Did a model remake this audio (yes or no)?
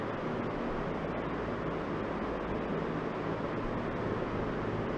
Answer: no